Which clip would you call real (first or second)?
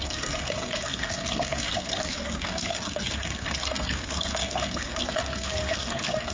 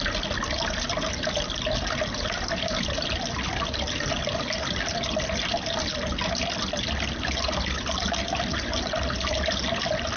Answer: second